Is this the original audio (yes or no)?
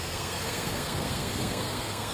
no